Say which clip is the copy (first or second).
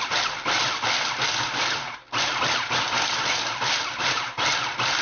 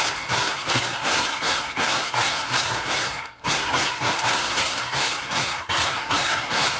second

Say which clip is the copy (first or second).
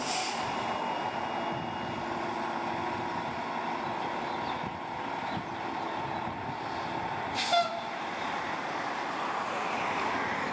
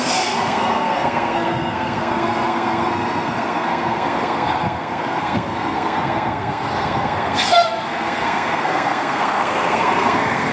second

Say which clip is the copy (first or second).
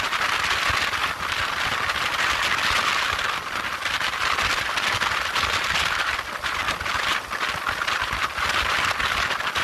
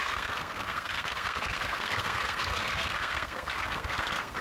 second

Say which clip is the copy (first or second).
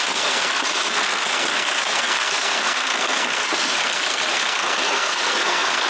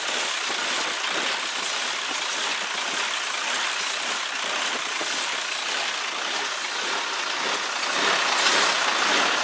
first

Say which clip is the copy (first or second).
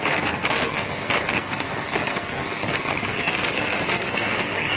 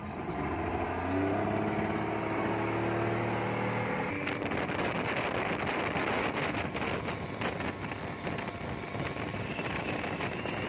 first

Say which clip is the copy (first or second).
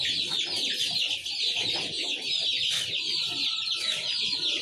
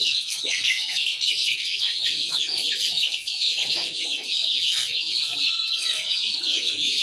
second